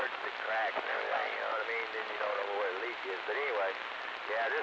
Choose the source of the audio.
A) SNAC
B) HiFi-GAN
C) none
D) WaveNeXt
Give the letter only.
C